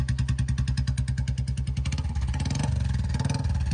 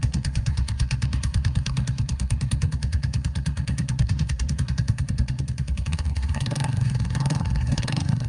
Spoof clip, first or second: second